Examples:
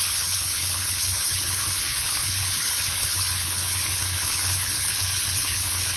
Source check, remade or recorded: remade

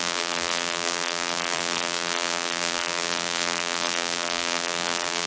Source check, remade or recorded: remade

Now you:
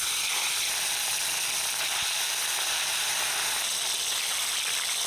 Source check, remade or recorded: recorded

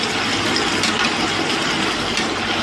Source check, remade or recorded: recorded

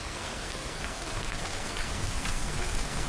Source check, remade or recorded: remade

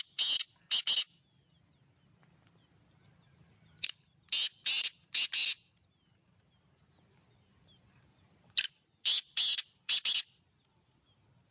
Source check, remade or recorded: recorded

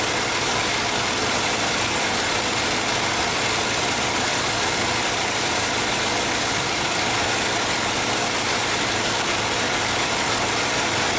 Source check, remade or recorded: remade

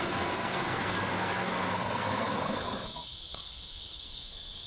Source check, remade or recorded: remade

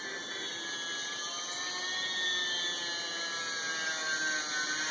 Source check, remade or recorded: recorded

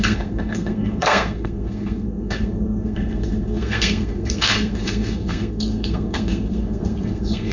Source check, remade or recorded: remade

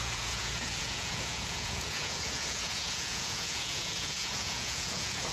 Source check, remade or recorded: remade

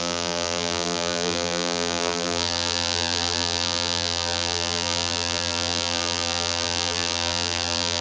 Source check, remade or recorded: remade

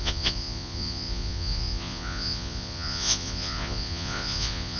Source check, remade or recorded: remade